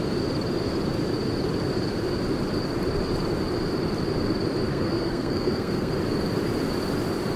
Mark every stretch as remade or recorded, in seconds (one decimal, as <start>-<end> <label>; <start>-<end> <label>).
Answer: 0.0-4.7 recorded; 4.7-5.9 remade; 5.9-7.4 recorded

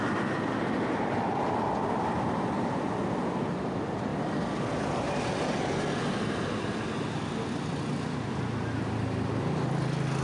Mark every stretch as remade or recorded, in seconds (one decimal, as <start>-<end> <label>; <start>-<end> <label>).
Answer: 0.0-10.2 recorded

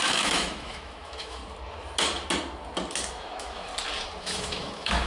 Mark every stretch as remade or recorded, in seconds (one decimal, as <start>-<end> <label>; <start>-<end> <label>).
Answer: 0.0-1.4 remade; 1.4-3.1 recorded; 3.1-3.7 remade; 3.7-4.2 recorded; 4.2-5.1 remade

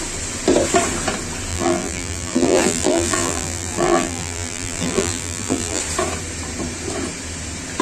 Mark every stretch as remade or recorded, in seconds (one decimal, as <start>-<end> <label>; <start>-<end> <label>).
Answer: 0.0-1.5 recorded; 1.5-5.8 remade; 5.8-7.8 recorded

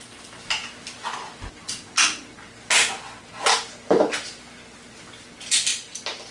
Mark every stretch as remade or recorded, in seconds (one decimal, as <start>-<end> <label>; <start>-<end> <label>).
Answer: 0.0-6.3 recorded

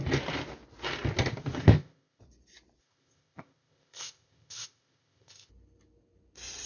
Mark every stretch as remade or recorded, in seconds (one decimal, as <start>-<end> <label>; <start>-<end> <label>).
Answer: 0.0-1.6 recorded; 1.6-2.2 remade; 2.2-2.8 recorded; 2.8-5.5 remade; 5.5-6.7 recorded